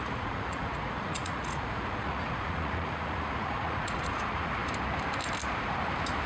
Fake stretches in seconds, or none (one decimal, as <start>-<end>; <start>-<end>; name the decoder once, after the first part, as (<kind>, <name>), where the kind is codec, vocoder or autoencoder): 0.0-4.6 (vocoder, Vocos)